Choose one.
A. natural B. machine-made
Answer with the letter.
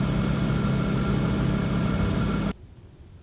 A